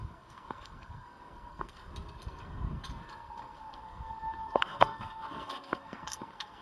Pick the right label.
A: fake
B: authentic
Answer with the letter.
A